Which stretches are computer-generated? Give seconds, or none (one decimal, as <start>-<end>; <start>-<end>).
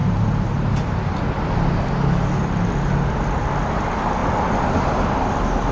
none